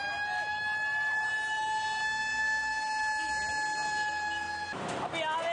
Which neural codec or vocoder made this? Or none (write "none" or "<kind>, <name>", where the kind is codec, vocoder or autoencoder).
none